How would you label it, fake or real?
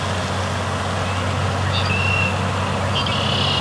real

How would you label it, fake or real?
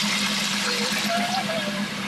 real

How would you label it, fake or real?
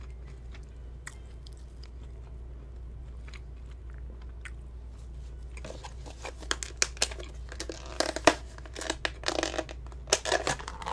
real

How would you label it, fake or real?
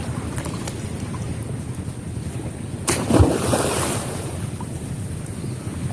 real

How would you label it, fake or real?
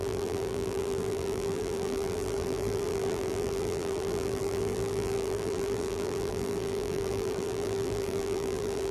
fake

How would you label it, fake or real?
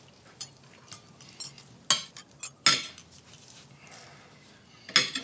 real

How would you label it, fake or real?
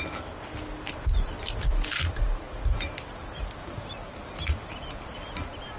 fake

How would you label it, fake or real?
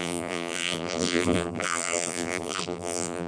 fake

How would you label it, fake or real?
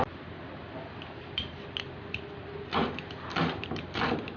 fake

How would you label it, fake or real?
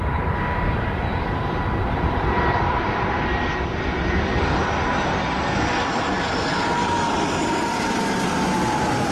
fake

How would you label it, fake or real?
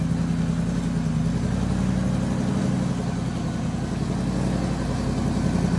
real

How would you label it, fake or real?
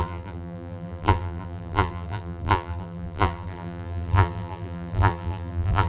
fake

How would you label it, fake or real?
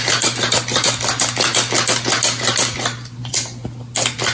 real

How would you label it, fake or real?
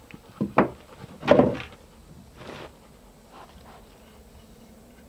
real